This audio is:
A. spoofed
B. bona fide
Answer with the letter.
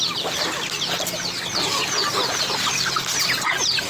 B